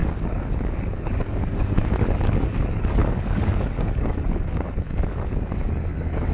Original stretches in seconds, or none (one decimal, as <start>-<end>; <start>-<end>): none